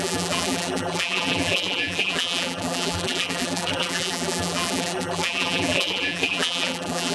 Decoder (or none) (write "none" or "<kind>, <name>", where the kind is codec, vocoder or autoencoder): vocoder, BigVGAN v2